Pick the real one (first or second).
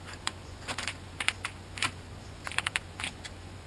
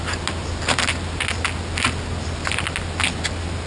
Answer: second